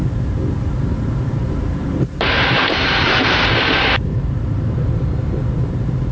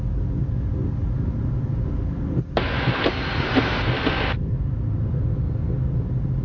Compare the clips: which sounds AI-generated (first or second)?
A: first